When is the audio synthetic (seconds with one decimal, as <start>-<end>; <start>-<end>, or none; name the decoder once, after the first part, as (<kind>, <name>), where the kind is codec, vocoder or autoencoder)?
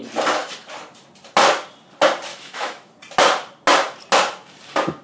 2.3-2.9 (autoencoder, DAC-VAE)